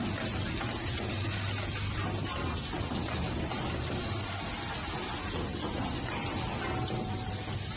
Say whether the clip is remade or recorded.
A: recorded